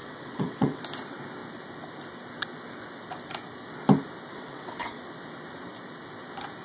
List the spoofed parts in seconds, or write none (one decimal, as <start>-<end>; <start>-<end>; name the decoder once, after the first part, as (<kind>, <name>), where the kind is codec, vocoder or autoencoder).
0.0-0.8 (vocoder, WaveNeXt); 4.3-5.0